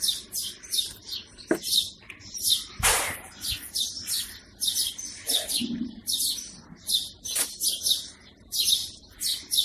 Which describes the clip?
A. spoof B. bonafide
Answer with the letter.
B